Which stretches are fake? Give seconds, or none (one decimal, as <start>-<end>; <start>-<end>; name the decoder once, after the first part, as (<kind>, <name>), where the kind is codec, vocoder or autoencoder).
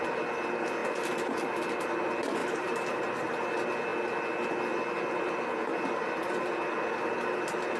2.4-3.4 (vocoder, BigVGAN v2)